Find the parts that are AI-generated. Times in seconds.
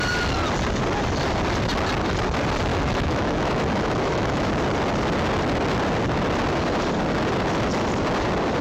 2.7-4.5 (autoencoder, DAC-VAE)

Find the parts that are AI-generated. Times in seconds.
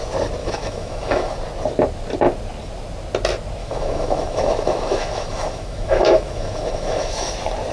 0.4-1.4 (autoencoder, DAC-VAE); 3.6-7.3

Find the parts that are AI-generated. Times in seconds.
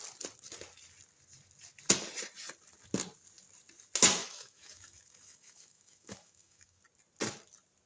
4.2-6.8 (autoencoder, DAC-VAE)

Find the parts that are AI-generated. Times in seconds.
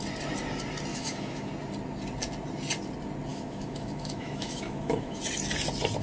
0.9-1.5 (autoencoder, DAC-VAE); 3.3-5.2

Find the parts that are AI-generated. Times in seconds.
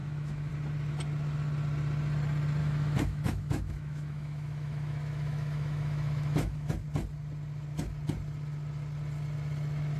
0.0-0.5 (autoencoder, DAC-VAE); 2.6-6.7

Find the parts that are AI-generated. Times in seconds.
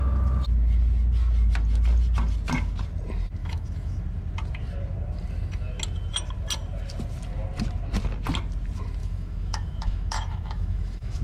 3.4-4.0 (autoencoder, DAC-VAE); 9.0-11.2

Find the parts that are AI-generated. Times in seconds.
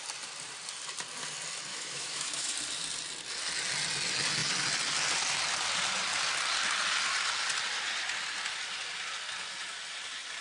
1.7-2.5 (autoencoder, DAC-VAE)